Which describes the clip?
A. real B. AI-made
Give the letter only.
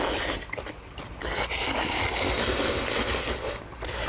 A